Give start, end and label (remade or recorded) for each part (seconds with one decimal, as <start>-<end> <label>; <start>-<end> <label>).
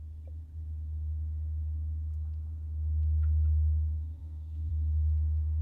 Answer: 0.0-4.2 recorded; 4.2-4.7 remade; 4.7-5.6 recorded